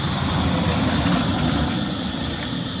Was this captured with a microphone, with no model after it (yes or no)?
yes